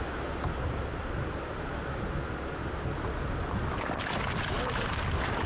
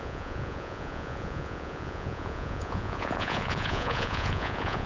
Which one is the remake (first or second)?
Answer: second